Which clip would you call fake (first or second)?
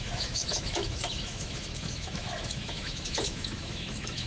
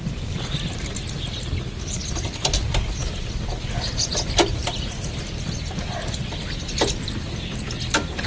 first